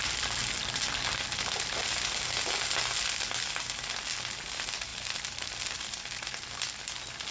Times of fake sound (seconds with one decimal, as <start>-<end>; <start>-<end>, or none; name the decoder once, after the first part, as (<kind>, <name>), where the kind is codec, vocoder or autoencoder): 4.9-7.3 (vocoder, BigVGAN v2)